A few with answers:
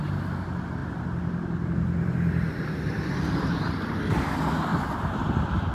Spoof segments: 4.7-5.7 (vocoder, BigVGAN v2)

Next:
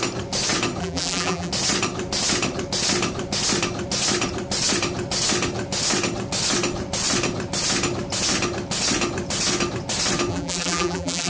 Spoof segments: 0.8-1.5 (vocoder, BigVGAN v2); 10.3-11.3

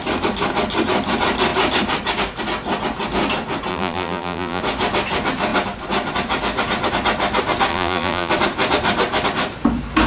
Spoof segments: 3.7-4.6 (vocoder, BigVGAN v2); 7.7-8.3

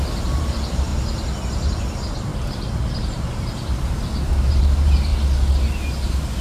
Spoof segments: 0.0-0.9 (vocoder, BigVGAN v2); 1.5-5.1

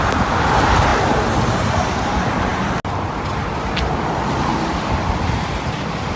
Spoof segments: none

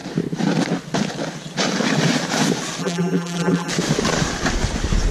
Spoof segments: 2.8-3.7 (vocoder, BigVGAN v2)